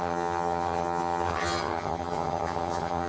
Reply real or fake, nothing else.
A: fake